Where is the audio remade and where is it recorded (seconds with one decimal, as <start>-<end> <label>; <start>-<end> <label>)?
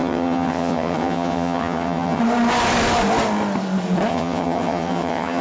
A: 0.0-2.2 remade; 2.2-4.1 recorded; 4.1-5.4 remade